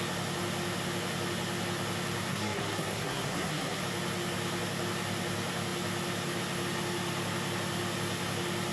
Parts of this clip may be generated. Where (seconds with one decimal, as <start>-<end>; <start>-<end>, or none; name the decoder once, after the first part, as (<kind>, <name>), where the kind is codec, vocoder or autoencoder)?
2.3-3.8 (codec, SNAC)